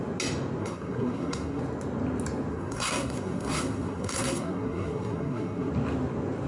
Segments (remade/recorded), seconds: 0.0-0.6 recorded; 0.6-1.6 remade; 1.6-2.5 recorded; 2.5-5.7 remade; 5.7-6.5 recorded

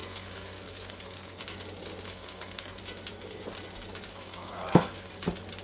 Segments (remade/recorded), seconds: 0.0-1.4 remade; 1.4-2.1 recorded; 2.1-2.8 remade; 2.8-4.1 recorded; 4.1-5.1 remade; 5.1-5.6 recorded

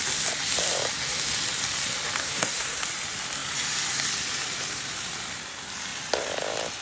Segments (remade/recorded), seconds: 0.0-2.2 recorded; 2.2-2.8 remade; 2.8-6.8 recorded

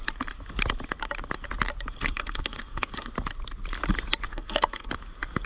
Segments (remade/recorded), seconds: 0.0-2.0 recorded; 2.0-3.1 remade; 3.1-4.3 recorded; 4.3-4.9 remade; 4.9-5.5 recorded

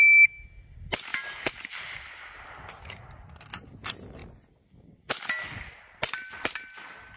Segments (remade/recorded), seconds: 0.0-7.2 recorded